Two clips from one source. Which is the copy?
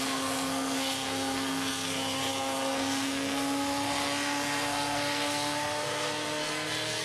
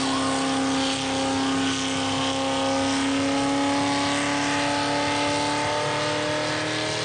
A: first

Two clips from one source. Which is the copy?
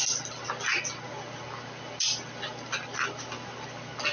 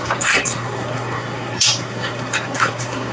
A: second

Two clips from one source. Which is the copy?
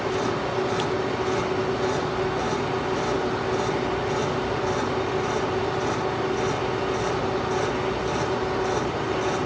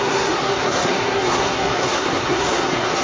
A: second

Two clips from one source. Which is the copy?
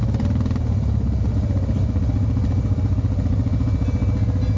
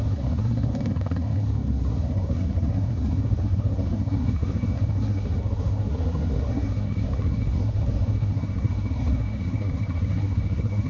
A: second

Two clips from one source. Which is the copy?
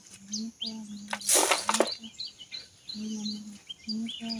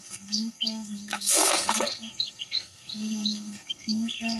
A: second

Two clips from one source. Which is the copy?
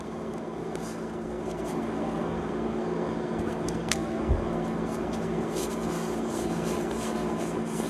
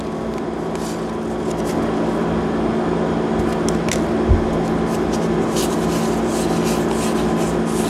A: first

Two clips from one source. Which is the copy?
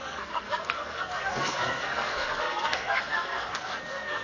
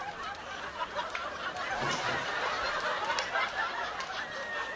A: first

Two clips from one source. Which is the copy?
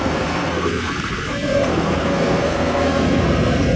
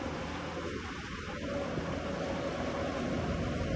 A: first